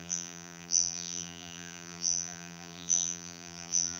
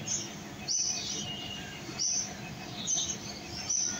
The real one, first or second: second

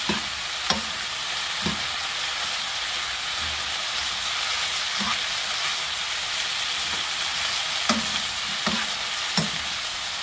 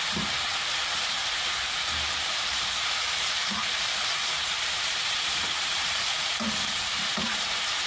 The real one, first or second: first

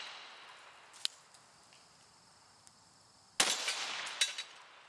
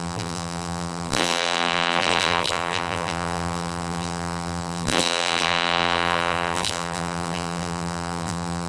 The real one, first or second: first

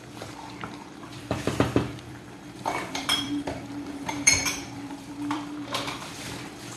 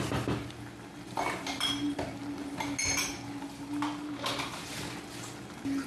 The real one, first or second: second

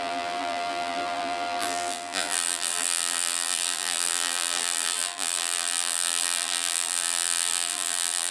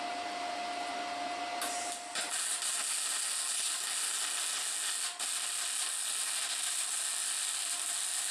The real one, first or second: second